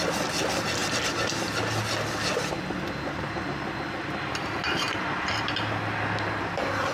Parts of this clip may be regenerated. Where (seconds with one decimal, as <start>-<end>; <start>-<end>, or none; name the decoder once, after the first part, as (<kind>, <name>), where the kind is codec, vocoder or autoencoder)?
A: none